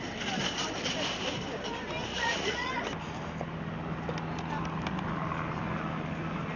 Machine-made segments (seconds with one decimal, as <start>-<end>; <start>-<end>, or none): 2.1-2.7